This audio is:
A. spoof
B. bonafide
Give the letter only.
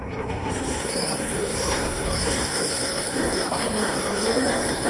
A